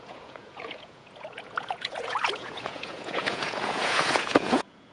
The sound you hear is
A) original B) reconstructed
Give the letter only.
B